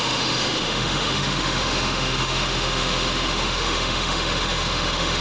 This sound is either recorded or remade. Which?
remade